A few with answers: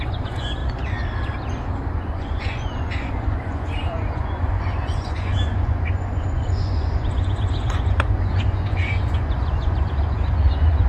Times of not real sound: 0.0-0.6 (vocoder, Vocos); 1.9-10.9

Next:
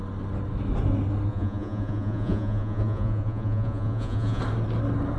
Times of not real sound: 1.3-4.4 (vocoder, Vocos)

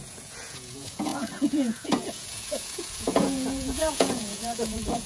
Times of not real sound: 0.0-5.1 (vocoder, Vocos)

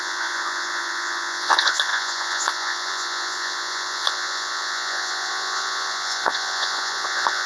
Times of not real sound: 0.0-7.5 (vocoder, Vocos)

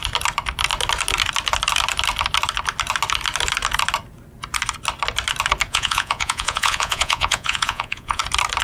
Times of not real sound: 5.7-8.2 (vocoder, Vocos)

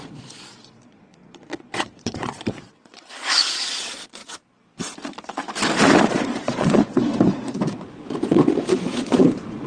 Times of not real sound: 0.0-4.2 (vocoder, Vocos); 6.1-9.7

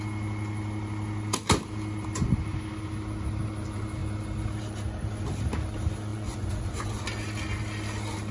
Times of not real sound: 6.1-7.0 (vocoder, Vocos)